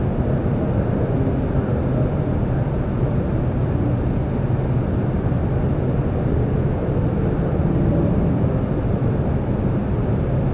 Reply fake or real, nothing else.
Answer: real